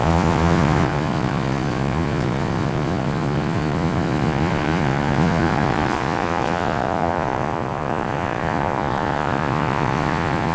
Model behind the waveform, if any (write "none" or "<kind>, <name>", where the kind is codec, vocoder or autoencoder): vocoder, Vocos